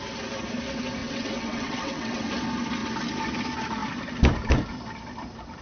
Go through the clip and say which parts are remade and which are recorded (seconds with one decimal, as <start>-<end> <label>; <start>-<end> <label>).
0.0-1.0 recorded; 1.0-2.3 remade; 2.3-5.6 recorded